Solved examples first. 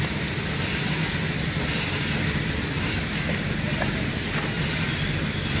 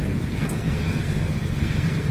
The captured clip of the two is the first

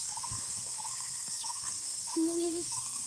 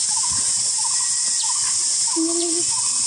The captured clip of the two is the second